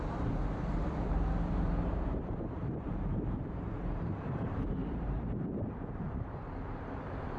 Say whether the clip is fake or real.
fake